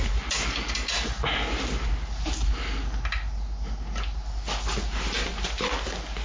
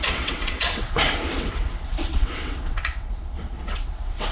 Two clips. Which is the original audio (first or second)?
first